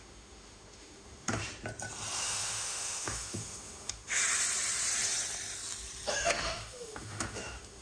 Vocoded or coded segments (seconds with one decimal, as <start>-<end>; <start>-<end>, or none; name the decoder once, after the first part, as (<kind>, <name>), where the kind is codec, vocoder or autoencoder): 0.0-1.4 (autoencoder, DAC-VAE); 2.2-4.2; 6.1-7.8